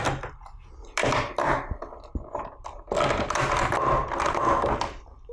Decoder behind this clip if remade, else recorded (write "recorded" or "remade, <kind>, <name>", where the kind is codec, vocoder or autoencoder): remade, vocoder, BigVGAN v2